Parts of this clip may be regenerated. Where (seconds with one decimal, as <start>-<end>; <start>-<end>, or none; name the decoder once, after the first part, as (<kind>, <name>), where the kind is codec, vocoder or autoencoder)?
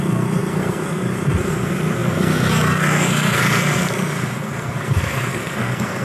0.0-6.0 (codec, SNAC)